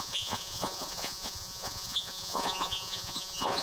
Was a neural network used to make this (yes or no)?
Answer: yes